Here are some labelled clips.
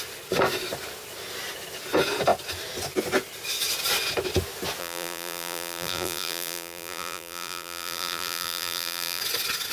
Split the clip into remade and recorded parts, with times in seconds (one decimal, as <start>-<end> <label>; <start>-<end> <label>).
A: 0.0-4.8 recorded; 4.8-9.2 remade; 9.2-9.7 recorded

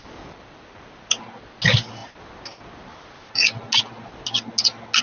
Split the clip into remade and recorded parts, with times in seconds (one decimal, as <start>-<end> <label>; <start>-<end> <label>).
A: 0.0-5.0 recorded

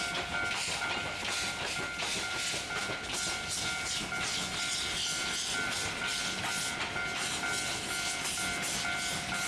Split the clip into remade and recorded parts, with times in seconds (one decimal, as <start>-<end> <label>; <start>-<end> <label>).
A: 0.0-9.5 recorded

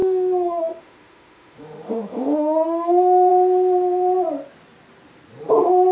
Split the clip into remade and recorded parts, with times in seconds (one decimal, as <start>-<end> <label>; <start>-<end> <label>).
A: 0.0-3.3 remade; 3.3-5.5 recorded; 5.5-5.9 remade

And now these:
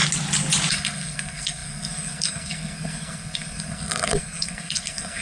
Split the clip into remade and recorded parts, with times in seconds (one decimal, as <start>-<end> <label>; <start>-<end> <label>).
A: 0.0-0.7 recorded; 0.7-5.2 remade

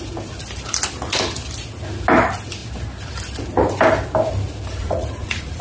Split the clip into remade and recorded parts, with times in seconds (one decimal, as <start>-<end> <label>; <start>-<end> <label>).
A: 0.0-4.8 recorded; 4.8-5.6 remade

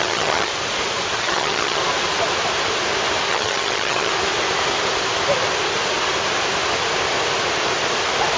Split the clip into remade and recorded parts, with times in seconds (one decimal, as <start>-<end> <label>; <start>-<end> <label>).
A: 0.0-0.5 remade; 0.5-1.2 recorded; 1.2-1.8 remade; 1.8-3.3 recorded; 3.3-4.1 remade; 4.1-8.4 recorded